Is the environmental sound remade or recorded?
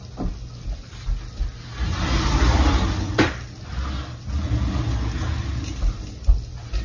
recorded